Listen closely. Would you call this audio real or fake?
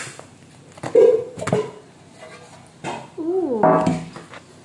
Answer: real